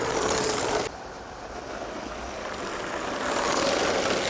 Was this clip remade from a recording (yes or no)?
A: no